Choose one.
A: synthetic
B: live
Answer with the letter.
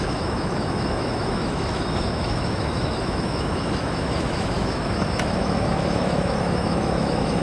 A